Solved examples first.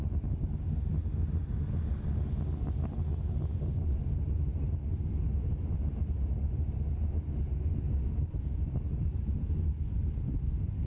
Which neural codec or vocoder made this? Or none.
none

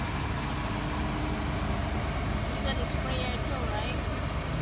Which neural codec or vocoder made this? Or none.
none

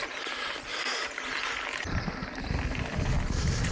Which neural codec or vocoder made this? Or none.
none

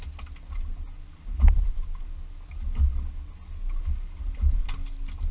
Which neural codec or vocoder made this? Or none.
none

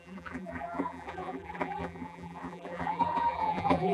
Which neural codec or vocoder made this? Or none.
vocoder, BigVGAN v2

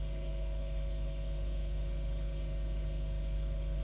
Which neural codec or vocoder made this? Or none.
codec, HILCodec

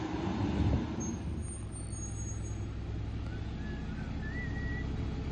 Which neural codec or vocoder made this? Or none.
none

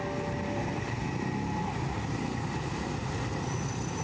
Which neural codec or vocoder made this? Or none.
none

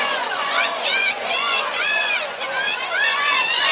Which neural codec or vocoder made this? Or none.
vocoder, Vocos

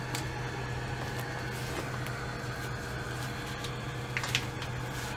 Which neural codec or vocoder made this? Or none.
none